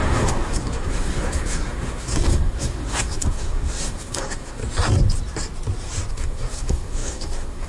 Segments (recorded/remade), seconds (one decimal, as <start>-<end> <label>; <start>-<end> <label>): 0.0-4.6 remade; 4.6-6.1 recorded; 6.1-7.7 remade